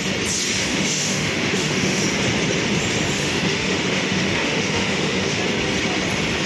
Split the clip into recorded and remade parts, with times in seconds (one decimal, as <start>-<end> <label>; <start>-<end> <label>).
0.0-0.6 recorded; 0.6-2.0 remade; 2.0-3.2 recorded; 3.2-5.4 remade; 5.4-6.5 recorded